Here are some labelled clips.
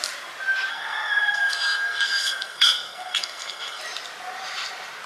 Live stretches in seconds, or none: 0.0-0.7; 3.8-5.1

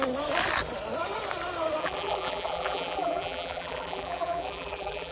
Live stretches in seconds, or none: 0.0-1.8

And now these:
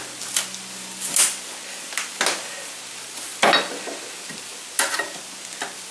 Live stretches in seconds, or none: 0.0-5.9

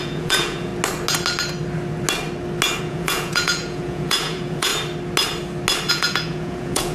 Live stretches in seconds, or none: 0.7-2.8; 4.7-5.9